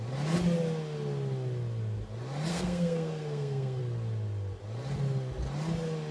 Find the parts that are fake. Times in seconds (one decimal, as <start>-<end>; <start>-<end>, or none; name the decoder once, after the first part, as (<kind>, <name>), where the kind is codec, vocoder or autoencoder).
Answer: 2.5-3.8 (codec, SNAC)